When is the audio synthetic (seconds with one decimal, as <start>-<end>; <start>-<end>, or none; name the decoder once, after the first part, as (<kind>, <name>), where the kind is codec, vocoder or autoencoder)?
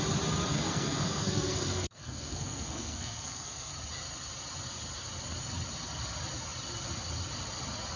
0.5-3.7 (codec, SNAC)